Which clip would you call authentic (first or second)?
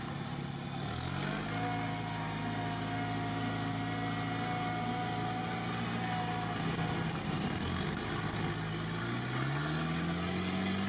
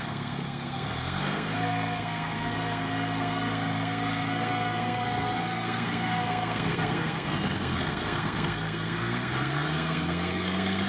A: first